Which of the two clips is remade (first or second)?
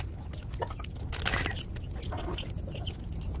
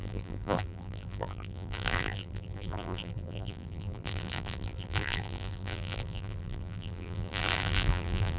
second